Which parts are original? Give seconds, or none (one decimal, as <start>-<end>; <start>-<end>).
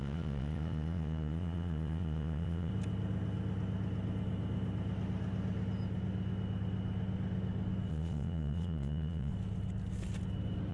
2.7-7.9; 9.3-10.7